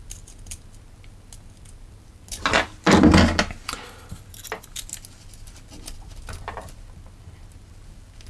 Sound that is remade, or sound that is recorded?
recorded